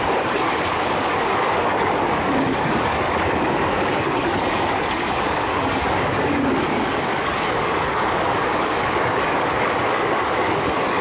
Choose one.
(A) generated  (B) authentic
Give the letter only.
A